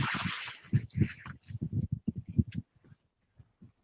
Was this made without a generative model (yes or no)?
yes